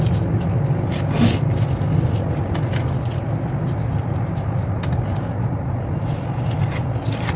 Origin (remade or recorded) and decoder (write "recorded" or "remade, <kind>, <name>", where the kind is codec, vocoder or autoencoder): recorded